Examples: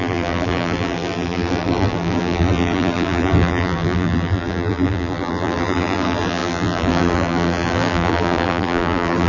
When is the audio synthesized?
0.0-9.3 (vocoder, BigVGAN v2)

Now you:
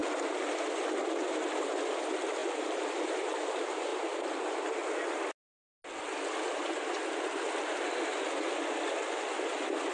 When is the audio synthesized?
0.0-0.7 (vocoder, BigVGAN v2); 2.4-3.5; 3.9-4.9

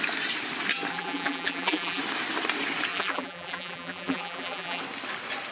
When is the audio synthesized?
0.9-2.0 (vocoder, BigVGAN v2); 2.9-4.8

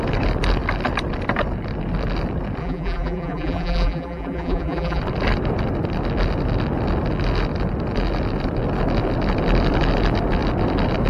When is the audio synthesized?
2.6-5.0 (vocoder, BigVGAN v2)

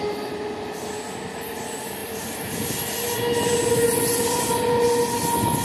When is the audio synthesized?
2.0-2.6 (vocoder, BigVGAN v2)

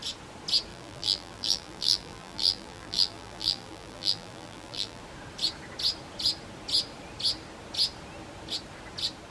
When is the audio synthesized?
0.7-5.0 (vocoder, BigVGAN v2)